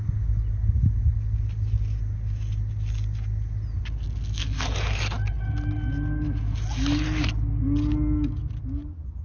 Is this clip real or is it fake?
real